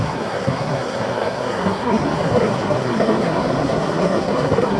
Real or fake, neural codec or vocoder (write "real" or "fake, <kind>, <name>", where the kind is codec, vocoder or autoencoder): fake, codec, SNAC